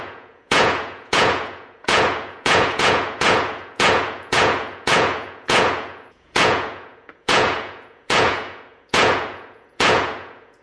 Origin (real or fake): fake